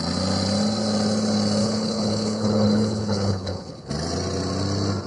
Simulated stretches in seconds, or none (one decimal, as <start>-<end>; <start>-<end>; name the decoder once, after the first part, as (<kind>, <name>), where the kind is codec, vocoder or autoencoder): 1.6-3.9 (codec, HILCodec)